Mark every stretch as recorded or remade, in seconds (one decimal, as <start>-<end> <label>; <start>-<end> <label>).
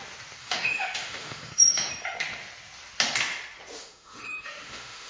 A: 0.0-0.4 recorded; 0.4-1.9 remade; 1.9-3.8 recorded; 3.8-5.1 remade